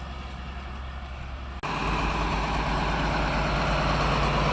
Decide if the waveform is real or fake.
real